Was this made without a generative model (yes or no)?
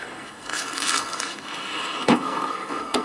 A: no